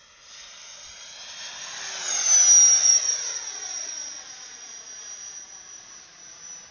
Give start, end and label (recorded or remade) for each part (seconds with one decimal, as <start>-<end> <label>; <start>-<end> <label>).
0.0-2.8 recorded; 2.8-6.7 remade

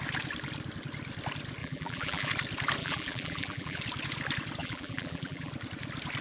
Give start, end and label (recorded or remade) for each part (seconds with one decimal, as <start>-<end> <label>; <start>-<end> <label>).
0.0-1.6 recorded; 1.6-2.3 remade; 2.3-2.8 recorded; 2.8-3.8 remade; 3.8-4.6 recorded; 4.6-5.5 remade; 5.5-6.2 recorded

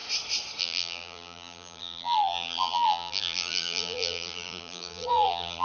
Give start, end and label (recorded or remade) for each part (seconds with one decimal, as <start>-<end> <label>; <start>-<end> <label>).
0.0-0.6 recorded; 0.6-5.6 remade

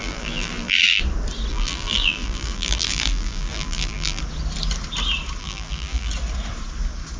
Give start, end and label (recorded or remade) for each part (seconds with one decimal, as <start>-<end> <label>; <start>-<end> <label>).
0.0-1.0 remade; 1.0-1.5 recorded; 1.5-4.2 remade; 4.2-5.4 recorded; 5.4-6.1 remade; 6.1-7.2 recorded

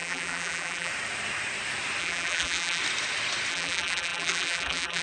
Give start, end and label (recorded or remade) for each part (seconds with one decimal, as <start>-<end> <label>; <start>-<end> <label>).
0.0-0.9 remade; 0.9-2.0 recorded; 2.0-2.8 remade; 2.8-3.5 recorded; 3.5-5.0 remade

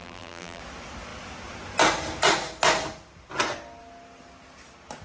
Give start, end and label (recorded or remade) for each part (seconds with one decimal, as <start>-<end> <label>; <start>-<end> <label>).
0.0-0.6 remade; 0.6-5.0 recorded